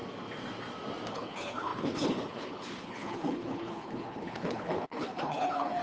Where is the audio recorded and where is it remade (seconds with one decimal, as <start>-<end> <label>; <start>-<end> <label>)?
0.0-1.1 recorded; 1.1-5.8 remade